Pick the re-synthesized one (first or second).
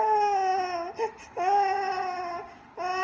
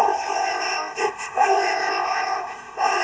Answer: second